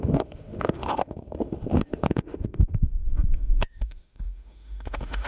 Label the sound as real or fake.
fake